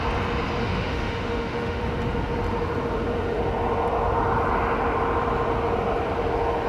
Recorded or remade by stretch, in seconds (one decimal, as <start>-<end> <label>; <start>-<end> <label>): 0.0-0.6 recorded; 0.6-1.8 remade; 1.8-6.7 recorded